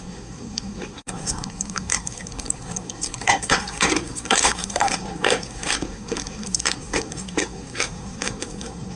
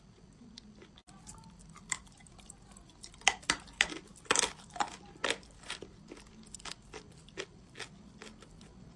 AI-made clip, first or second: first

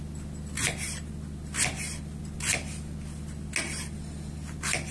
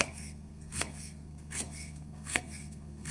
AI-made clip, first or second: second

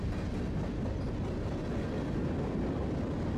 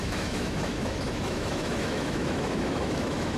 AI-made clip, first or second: second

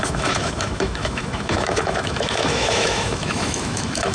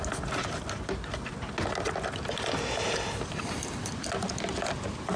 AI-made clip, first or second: first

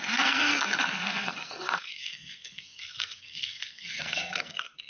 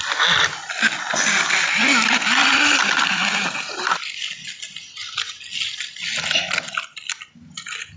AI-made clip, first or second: first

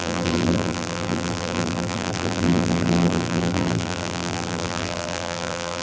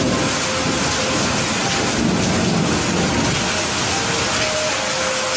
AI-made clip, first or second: first